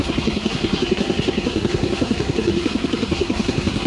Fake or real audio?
fake